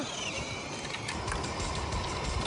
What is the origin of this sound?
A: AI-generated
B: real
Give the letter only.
B